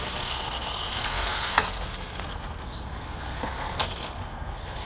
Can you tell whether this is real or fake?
fake